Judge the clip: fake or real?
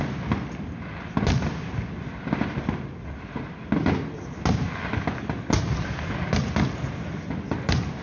real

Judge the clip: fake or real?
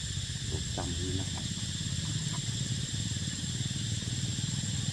real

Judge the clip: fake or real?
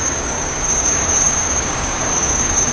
fake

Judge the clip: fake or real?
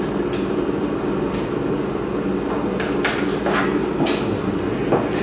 real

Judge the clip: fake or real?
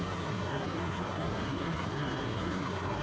fake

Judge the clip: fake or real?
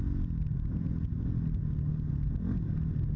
real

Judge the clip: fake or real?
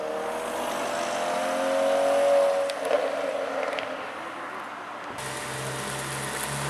real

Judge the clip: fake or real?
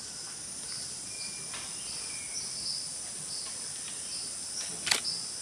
real